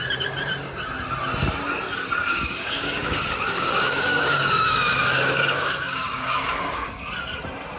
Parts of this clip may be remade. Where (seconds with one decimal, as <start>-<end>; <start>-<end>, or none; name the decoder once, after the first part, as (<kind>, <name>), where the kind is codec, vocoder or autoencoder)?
2.2-6.9 (codec, DAC)